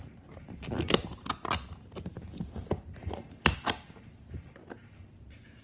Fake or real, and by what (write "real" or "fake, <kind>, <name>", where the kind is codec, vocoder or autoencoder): real